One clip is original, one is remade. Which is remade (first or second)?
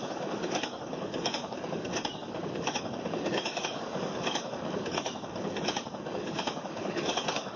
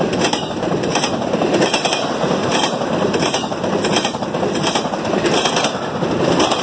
first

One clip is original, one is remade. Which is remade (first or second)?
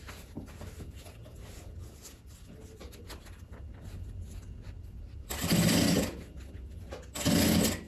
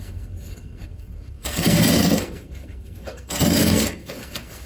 second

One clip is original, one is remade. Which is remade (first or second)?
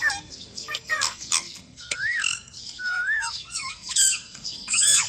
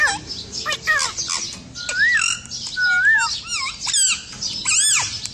first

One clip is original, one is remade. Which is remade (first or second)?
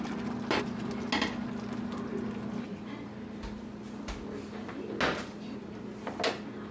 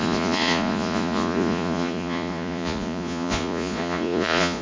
second